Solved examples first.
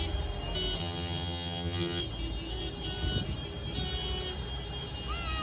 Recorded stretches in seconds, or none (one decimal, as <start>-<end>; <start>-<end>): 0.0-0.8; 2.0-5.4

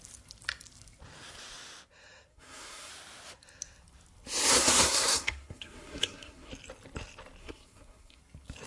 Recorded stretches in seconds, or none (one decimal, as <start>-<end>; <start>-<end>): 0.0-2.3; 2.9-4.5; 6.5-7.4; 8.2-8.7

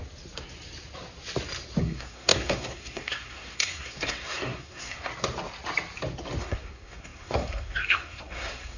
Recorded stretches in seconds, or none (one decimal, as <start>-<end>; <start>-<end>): 0.0-1.8; 5.1-6.4